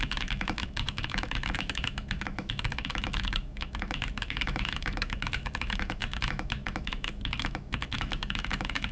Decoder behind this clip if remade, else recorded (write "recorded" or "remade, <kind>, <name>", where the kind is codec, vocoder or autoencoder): remade, autoencoder, DAC-VAE